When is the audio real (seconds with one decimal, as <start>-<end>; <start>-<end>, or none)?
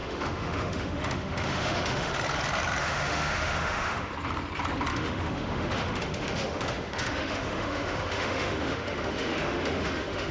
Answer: 2.1-2.8; 4.1-4.9